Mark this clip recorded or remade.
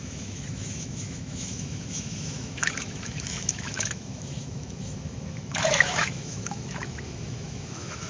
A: remade